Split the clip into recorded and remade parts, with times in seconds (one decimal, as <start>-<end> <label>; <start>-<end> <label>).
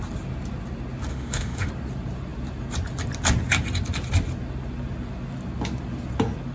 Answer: 0.0-1.1 recorded; 1.1-1.7 remade; 1.7-6.5 recorded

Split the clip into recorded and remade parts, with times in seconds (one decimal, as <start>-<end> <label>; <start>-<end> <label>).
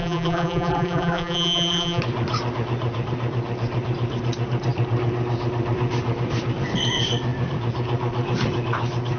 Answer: 0.0-2.0 remade; 2.0-9.2 recorded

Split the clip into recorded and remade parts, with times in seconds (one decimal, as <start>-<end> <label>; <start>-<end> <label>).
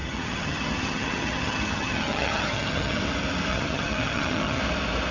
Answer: 0.0-3.0 remade; 3.0-3.5 recorded; 3.5-4.6 remade; 4.6-5.1 recorded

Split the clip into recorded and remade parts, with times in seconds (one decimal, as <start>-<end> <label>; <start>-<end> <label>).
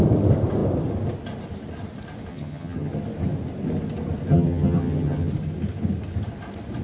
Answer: 0.0-2.3 recorded; 2.3-2.9 remade; 2.9-4.3 recorded; 4.3-5.3 remade; 5.3-6.8 recorded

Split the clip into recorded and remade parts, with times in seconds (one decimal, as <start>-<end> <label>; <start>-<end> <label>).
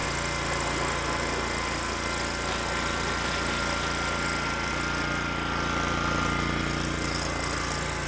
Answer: 0.0-8.1 recorded